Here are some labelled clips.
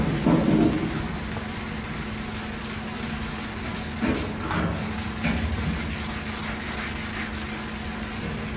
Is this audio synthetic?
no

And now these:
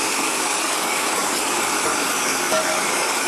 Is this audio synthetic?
yes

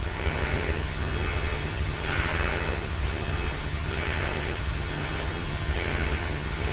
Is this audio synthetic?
yes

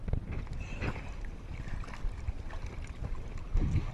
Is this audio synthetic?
no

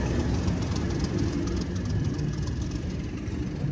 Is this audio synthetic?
no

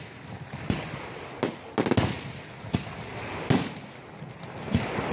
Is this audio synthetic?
no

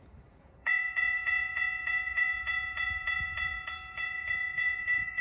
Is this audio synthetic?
yes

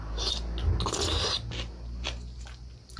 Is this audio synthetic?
no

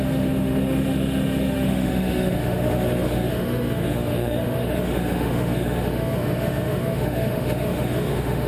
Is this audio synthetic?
yes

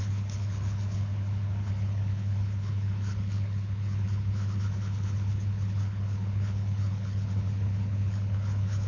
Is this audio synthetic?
yes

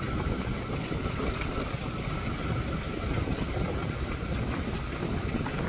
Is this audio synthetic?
no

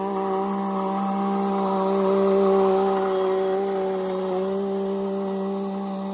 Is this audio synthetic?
no